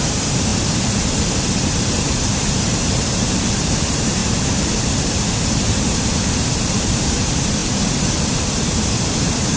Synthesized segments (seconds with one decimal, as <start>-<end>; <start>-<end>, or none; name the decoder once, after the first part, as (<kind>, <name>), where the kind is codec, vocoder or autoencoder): 0.0-0.5 (vocoder, BigVGAN v2); 1.7-9.6